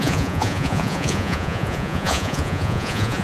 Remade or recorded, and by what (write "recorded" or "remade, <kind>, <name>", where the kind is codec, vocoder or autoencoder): remade, vocoder, Vocos